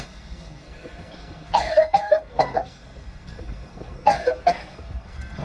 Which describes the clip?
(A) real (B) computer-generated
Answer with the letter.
B